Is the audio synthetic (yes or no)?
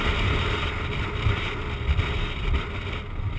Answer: no